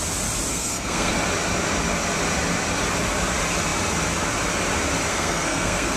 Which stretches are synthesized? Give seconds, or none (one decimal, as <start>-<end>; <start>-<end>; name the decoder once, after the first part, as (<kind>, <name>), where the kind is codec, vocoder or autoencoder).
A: 0.5-1.1 (codec, SNAC); 5.1-6.0